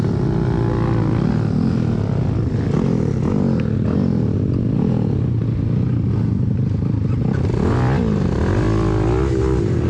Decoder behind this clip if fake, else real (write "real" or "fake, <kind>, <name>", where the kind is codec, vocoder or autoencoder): real